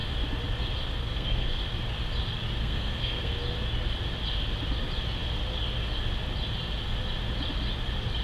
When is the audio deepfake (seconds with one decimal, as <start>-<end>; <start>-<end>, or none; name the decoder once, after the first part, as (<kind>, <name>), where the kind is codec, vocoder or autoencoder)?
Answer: 1.0-1.6 (codec, SNAC); 2.6-3.3